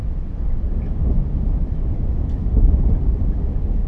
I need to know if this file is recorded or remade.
recorded